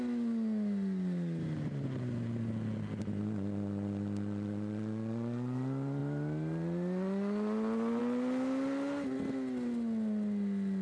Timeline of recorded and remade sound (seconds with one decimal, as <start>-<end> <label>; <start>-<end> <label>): 0.0-10.8 recorded